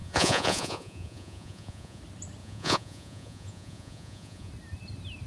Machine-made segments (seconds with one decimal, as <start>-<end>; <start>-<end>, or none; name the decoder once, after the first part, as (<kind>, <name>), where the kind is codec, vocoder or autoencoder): 0.0-2.0 (vocoder, Vocos); 2.4-4.5